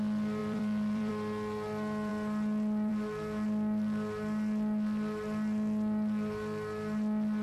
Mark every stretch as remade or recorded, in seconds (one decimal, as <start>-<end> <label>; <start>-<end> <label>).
0.0-0.4 recorded; 0.4-1.1 remade; 1.1-7.4 recorded